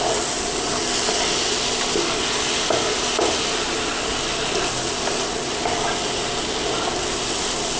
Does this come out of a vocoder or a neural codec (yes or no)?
no